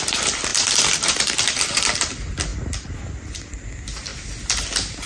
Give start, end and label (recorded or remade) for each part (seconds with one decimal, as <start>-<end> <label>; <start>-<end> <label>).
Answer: 0.0-5.1 recorded